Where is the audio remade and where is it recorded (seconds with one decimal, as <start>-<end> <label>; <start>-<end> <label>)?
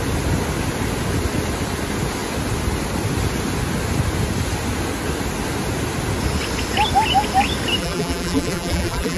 0.0-7.8 recorded; 7.8-9.2 remade